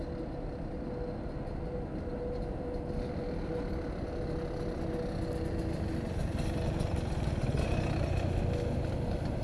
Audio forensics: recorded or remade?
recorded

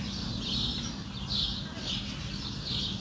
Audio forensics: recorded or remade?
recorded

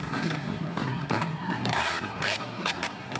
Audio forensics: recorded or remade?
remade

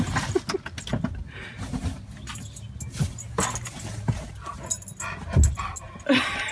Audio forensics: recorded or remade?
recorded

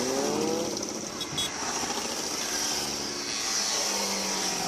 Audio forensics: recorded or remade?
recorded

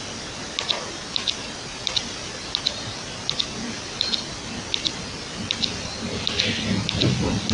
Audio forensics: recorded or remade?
recorded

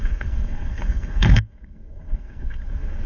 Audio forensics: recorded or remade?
remade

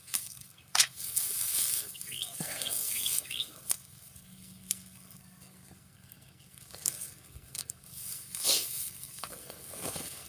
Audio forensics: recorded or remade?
remade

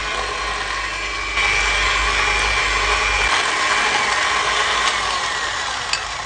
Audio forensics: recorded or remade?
recorded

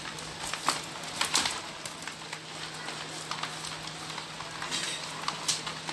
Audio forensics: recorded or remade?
recorded